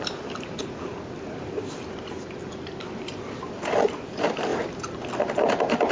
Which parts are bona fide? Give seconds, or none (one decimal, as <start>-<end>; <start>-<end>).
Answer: 0.6-3.0; 4.5-5.2